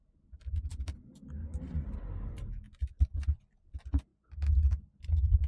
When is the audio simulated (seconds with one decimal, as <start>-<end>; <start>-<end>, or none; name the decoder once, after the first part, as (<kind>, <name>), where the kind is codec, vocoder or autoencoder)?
none